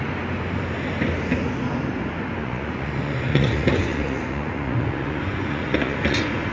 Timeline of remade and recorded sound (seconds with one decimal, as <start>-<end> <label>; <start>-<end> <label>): 0.0-2.4 recorded; 2.4-6.5 remade